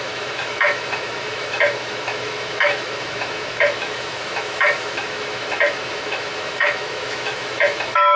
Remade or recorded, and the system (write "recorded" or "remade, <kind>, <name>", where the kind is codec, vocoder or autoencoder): remade, autoencoder, DAC-VAE